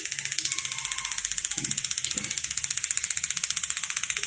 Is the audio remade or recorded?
recorded